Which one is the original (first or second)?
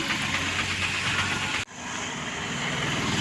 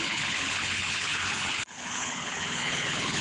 first